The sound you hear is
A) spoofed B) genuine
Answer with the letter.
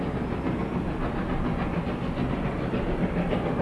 B